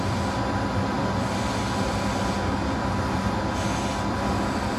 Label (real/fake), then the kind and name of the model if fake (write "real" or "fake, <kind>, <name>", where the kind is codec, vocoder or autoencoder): real